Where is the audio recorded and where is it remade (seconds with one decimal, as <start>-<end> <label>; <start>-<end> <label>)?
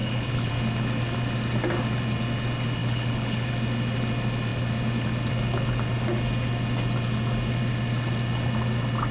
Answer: 0.0-0.5 remade; 0.5-2.8 recorded; 2.8-3.5 remade; 3.5-9.1 recorded